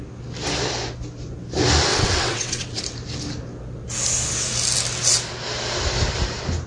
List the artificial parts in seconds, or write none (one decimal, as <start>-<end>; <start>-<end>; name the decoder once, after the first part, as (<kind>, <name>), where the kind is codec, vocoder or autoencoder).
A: 1.9-2.8 (vocoder, WaveNeXt)